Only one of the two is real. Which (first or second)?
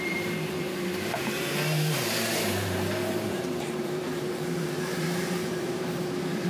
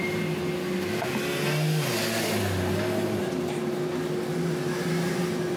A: second